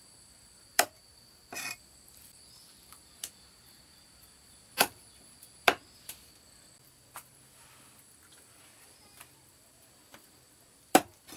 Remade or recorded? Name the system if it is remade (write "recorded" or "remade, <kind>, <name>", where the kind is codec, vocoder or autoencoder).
remade, vocoder, BigVGAN v2